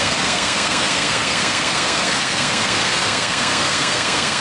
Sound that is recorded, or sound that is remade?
remade